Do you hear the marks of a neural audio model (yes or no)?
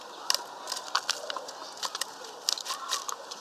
no